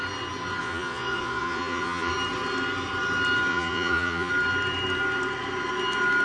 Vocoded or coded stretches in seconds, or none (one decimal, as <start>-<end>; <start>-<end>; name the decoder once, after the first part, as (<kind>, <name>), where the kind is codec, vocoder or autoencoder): 0.6-2.1 (vocoder, Vocos); 3.5-4.3